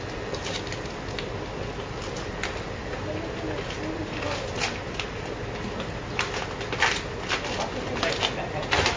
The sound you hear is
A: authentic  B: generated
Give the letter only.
A